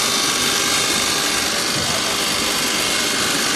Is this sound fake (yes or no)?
no